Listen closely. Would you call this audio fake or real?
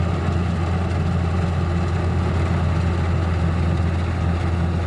real